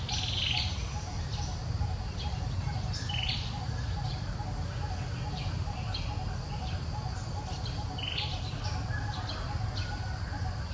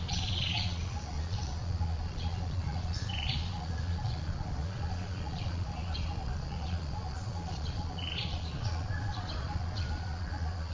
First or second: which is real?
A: first